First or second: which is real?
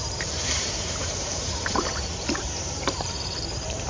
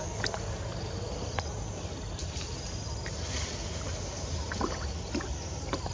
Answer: second